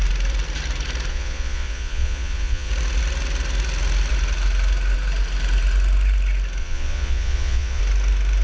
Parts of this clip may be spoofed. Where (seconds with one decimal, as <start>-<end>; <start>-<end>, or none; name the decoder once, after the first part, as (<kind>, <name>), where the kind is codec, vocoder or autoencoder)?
1.1-2.7 (vocoder, Vocos); 6.6-7.8

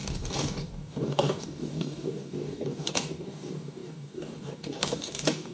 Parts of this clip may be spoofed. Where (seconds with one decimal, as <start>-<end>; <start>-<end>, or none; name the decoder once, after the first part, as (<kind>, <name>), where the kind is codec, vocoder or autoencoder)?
0.0-5.5 (codec, DAC)

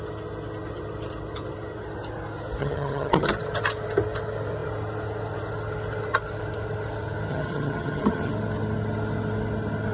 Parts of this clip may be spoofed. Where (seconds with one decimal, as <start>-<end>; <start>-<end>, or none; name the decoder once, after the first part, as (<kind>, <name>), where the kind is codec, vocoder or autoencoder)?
2.6-3.3 (vocoder, HiFi-GAN); 7.3-8.3

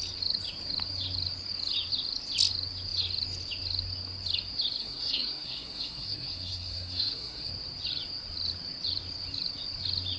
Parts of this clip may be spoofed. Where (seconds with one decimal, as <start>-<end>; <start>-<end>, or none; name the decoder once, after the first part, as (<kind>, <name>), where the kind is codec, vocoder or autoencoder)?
4.8-7.5 (codec, SNAC)

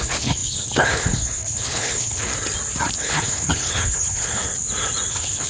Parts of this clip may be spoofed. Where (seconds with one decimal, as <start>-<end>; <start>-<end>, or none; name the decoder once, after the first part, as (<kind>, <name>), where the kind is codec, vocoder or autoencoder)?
0.0-2.3 (codec, HILCodec); 3.0-4.4; 5.1-5.5